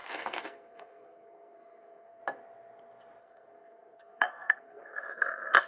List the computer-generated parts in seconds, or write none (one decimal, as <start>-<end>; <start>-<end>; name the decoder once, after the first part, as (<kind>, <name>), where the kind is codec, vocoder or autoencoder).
0.0-2.2 (codec, SNAC); 3.2-5.7